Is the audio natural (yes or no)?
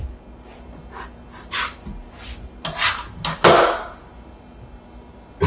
yes